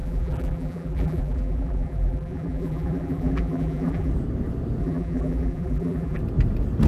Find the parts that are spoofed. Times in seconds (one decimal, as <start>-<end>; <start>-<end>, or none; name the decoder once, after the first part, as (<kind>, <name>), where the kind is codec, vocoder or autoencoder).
0.0-4.1 (vocoder, BigVGAN v2); 4.8-6.2